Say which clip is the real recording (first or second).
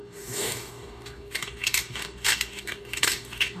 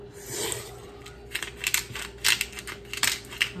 second